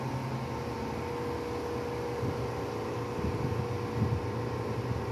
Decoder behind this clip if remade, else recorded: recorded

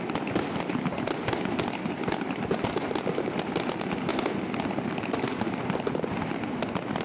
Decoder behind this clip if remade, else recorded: recorded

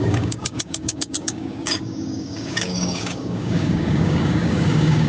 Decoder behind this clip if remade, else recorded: remade, codec, DAC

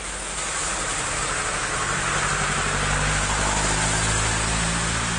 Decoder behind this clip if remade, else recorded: recorded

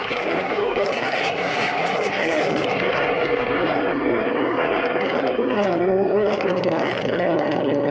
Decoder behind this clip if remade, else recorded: remade, codec, SNAC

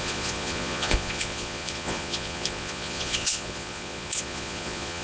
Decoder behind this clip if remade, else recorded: remade, vocoder, Vocos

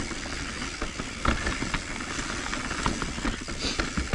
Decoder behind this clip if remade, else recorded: recorded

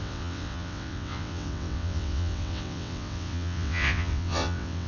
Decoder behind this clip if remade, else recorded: remade, vocoder, WaveNeXt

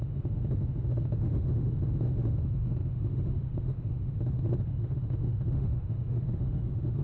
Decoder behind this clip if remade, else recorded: remade, autoencoder, DAC-VAE